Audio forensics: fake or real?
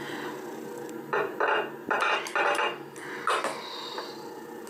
real